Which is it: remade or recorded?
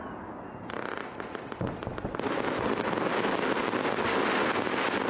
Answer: recorded